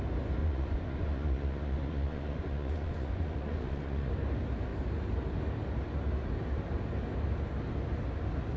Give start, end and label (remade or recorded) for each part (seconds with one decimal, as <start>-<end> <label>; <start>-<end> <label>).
0.0-0.4 recorded; 0.4-4.1 remade; 4.1-8.6 recorded